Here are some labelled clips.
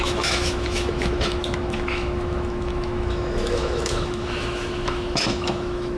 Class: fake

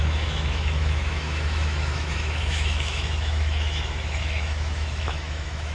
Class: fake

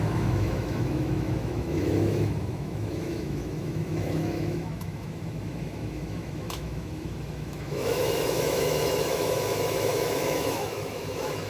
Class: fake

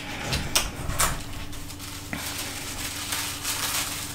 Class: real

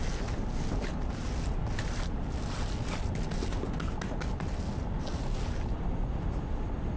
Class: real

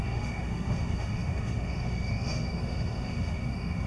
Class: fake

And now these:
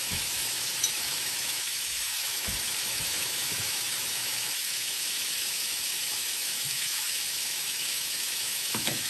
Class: fake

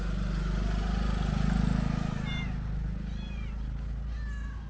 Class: real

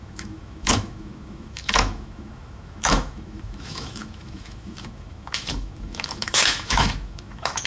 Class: fake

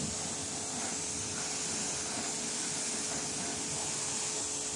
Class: real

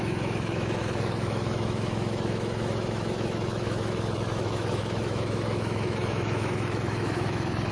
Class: fake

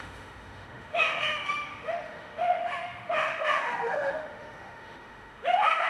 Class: fake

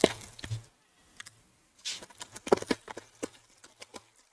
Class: real